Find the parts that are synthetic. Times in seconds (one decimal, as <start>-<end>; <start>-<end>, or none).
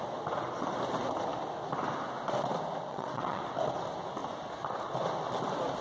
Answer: 2.9-3.4